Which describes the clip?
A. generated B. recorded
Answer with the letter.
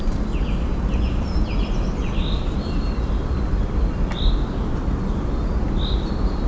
B